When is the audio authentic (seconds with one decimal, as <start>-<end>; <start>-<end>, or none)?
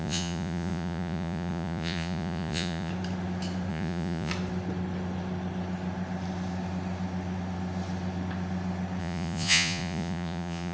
2.9-3.7; 4.3-9.0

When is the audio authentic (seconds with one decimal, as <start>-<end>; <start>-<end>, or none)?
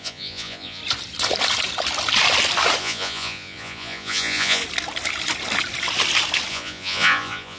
0.8-2.8; 4.6-6.5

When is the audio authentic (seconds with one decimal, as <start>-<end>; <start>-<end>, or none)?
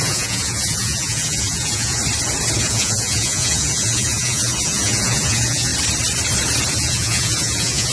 2.0-2.6; 5.7-6.7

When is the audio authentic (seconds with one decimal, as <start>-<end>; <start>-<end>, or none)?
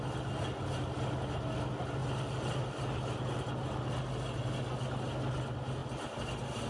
0.0-6.7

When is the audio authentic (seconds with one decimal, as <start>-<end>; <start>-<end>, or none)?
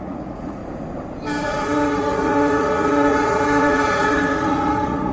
0.6-1.4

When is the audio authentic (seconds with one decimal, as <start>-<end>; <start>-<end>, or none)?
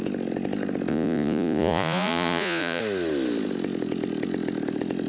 0.0-0.9; 2.8-5.1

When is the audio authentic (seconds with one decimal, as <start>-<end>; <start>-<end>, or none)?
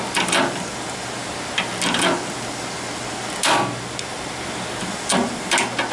0.0-5.9